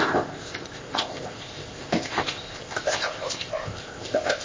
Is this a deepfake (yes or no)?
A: yes